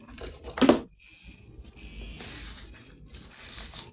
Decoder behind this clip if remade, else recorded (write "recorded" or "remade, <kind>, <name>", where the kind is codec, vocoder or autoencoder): recorded